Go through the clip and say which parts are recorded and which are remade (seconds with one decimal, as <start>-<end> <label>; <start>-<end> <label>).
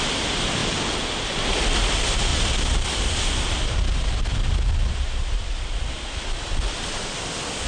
0.0-0.6 remade; 0.6-1.8 recorded; 1.8-7.7 remade